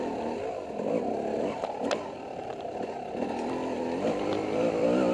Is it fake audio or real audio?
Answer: real